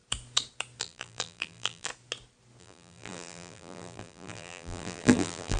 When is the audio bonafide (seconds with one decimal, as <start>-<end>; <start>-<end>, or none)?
0.0-0.8; 1.9-2.6